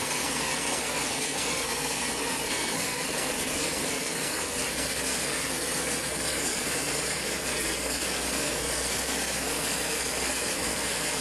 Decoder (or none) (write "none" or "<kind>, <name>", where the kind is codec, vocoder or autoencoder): codec, SNAC